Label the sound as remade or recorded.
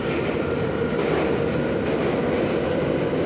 recorded